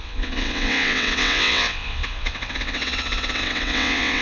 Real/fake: fake